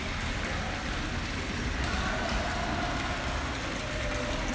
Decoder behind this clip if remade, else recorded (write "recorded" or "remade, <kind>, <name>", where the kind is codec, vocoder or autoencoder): recorded